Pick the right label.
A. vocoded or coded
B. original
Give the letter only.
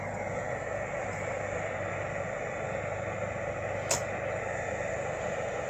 B